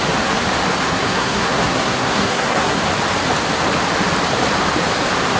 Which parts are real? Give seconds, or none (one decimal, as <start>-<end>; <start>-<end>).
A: 0.0-0.9; 2.8-5.4

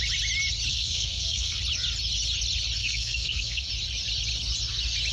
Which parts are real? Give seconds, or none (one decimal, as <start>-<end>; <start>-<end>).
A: 0.0-0.7; 1.6-2.8; 3.7-5.1

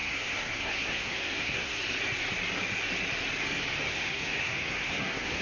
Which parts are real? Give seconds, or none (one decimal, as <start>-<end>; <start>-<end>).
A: 1.8-3.9

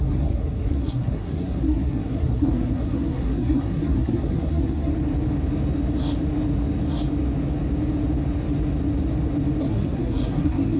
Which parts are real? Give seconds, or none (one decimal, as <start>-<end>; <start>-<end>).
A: 4.9-9.7

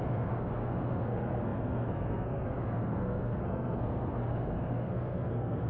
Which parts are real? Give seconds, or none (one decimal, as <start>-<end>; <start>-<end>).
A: none

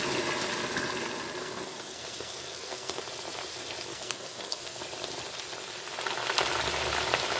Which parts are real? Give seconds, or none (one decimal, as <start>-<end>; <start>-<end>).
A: 0.0-1.4; 3.0-3.9; 4.8-7.4

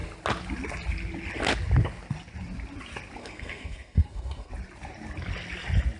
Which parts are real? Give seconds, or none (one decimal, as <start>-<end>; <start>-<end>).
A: 0.0-3.2; 4.5-6.0